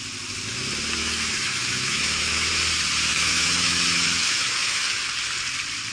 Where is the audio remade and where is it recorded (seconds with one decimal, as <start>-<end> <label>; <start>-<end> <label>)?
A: 0.0-1.0 recorded; 1.0-2.5 remade; 2.5-3.1 recorded; 3.1-5.0 remade; 5.0-5.9 recorded